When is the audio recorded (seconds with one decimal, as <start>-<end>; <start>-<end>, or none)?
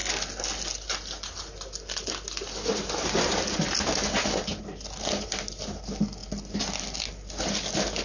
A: 0.0-8.0